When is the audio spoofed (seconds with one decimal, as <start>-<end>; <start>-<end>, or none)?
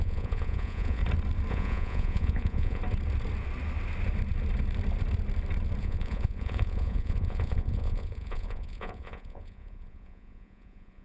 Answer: 0.0-1.0; 1.5-2.8; 5.8-11.0